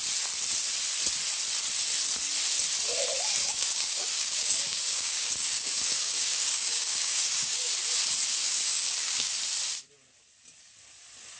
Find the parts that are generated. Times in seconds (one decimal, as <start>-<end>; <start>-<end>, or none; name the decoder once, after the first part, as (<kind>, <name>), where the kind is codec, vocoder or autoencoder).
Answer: 3.4-7.7 (codec, DAC); 8.4-9.3